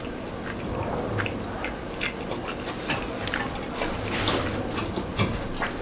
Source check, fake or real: real